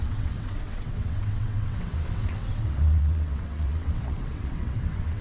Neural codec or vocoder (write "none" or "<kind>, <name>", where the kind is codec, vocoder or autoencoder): vocoder, WaveNeXt